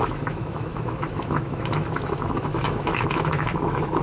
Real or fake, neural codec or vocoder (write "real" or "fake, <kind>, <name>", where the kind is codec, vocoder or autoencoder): fake, autoencoder, DAC-VAE